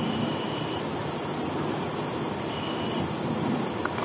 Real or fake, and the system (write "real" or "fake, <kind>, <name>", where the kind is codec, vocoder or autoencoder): real